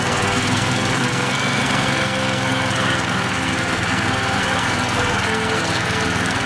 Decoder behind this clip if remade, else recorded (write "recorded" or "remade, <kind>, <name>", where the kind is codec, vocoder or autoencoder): remade, codec, SNAC